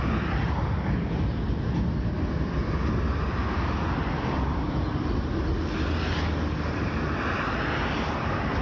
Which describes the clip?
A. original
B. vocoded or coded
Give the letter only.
A